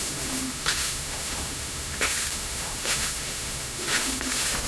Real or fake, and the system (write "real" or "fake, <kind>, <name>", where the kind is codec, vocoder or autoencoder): fake, autoencoder, DAC-VAE